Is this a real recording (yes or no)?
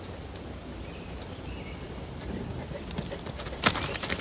yes